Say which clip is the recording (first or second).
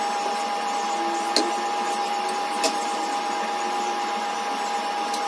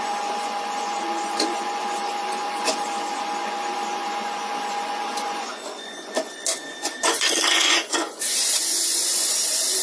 first